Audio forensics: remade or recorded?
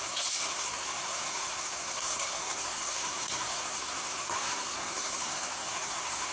remade